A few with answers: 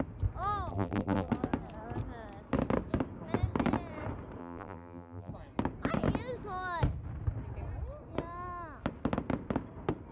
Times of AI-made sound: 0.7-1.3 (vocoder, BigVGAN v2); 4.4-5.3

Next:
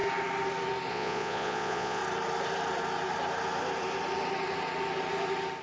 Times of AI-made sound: 0.9-2.0 (vocoder, Vocos)

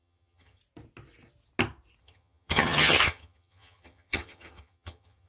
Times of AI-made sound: 0.0-0.6 (vocoder, HiFi-GAN); 2.0-5.3